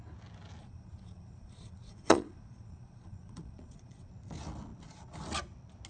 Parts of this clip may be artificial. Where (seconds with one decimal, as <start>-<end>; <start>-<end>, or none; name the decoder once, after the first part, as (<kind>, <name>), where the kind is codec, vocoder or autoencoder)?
0.6-4.1 (vocoder, Vocos)